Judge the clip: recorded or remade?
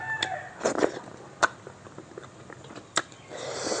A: recorded